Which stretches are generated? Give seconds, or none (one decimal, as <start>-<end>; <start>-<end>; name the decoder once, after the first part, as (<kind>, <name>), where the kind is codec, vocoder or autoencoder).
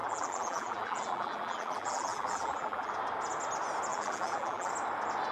0.0-2.9 (vocoder, BigVGAN v2); 3.9-4.7